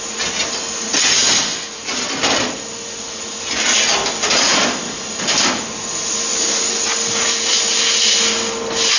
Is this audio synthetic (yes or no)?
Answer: no